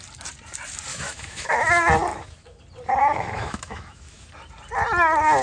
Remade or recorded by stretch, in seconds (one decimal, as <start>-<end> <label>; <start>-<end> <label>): 0.0-0.9 recorded; 0.9-1.6 remade; 1.6-2.1 recorded; 2.1-2.6 remade; 2.6-3.0 recorded; 3.0-4.3 remade; 4.3-5.4 recorded